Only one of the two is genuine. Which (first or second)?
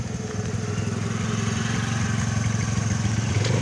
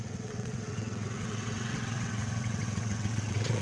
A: first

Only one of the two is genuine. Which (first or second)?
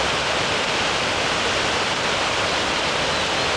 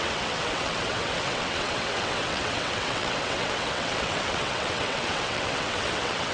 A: first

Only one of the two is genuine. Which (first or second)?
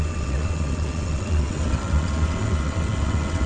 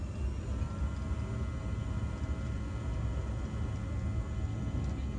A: second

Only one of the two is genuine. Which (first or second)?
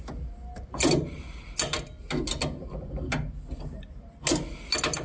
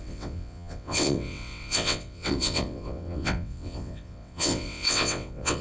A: first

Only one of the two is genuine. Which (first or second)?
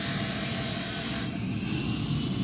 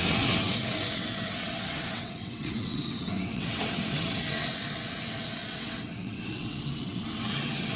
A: first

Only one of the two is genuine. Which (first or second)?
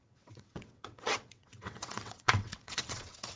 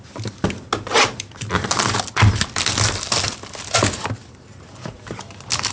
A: second